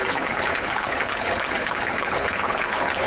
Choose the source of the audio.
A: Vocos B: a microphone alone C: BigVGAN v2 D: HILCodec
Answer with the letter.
D